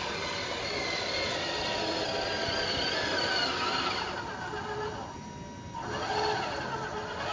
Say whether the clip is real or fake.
real